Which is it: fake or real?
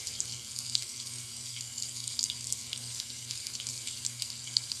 fake